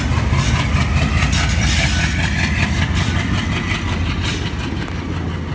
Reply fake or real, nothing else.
real